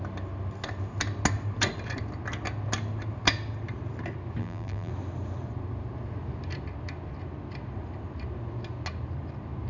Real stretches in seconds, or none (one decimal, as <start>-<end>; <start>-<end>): 0.0-4.4; 4.9-9.7